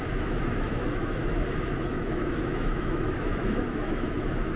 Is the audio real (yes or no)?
no